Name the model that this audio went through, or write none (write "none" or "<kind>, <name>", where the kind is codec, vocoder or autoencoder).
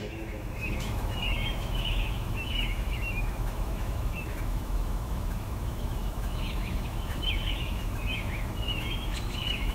autoencoder, DAC-VAE